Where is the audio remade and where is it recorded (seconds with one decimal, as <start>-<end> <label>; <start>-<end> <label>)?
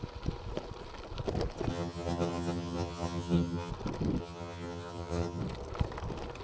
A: 0.0-1.7 recorded; 1.7-3.7 remade; 3.7-4.2 recorded; 4.2-5.4 remade; 5.4-6.4 recorded